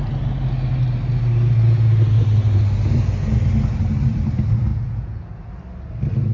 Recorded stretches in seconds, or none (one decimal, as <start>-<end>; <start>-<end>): 0.0-4.7; 5.5-6.3